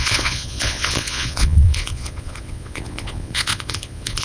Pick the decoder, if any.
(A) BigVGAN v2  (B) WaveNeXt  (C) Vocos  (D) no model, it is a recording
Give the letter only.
C